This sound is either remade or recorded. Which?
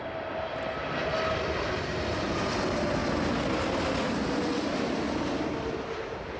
recorded